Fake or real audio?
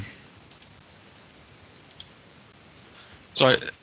fake